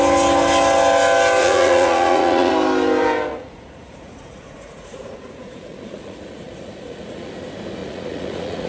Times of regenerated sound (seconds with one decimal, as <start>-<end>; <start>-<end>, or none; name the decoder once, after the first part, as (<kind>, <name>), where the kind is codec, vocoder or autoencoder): 1.4-2.5 (vocoder, Vocos); 3.3-7.3; 7.8-8.7